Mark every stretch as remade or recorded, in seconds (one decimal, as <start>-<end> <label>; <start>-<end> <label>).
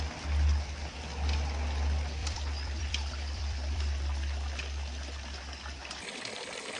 0.0-2.2 recorded; 2.2-3.8 remade; 3.8-5.8 recorded; 5.8-6.8 remade